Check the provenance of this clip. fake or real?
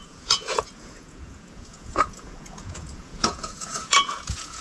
fake